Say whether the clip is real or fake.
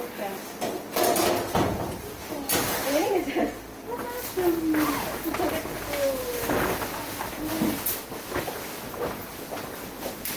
real